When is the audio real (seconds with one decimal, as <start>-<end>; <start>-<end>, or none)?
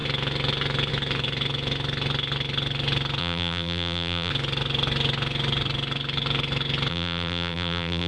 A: 0.0-3.2; 4.3-6.9